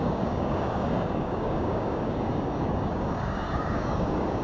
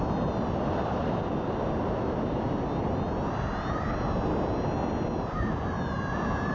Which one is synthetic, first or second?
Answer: first